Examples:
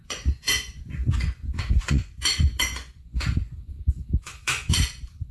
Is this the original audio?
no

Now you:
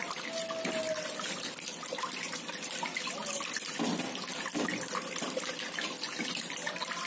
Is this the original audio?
yes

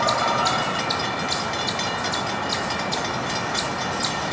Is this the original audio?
yes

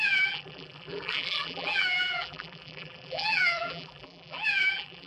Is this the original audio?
no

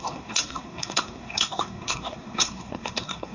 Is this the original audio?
no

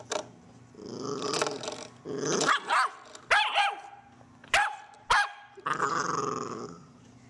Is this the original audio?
yes